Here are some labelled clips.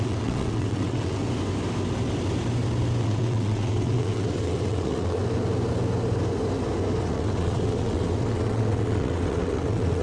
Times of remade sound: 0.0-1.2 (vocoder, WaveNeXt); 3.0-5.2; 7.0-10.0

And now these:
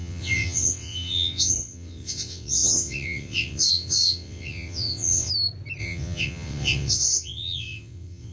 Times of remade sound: 0.0-5.3 (vocoder, WaveNeXt); 5.8-8.3

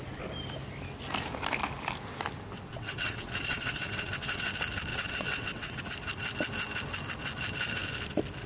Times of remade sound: 2.7-4.5 (vocoder, WaveNeXt); 4.9-5.8